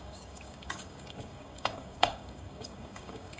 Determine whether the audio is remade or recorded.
remade